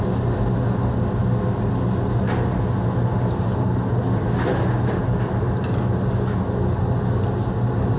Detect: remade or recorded recorded